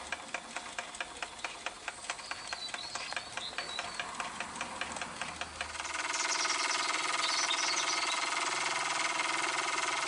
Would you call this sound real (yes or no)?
yes